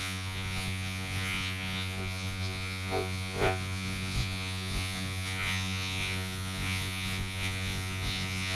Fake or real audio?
fake